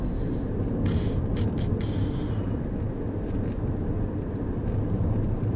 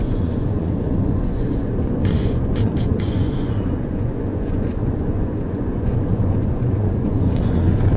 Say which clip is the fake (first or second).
second